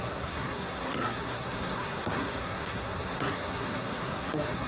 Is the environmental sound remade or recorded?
remade